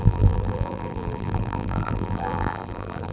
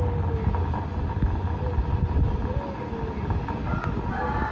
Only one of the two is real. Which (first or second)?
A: second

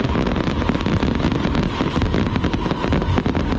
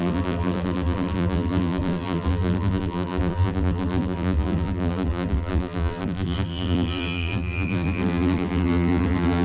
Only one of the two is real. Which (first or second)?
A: first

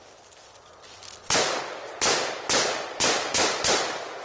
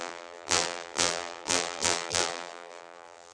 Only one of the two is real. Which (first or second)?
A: first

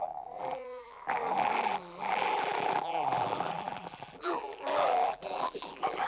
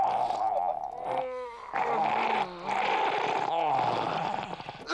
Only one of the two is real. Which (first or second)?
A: second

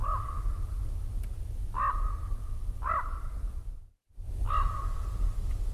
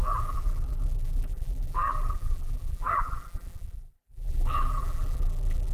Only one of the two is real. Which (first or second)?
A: first